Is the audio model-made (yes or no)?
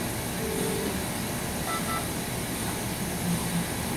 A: no